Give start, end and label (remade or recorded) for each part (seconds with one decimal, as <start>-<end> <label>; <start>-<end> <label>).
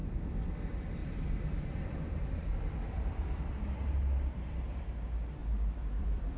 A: 0.0-0.5 remade; 0.5-1.0 recorded; 1.0-4.8 remade; 4.8-5.4 recorded; 5.4-6.4 remade